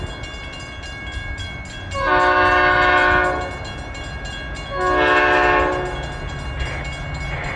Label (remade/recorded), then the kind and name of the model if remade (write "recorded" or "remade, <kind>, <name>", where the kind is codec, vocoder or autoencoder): recorded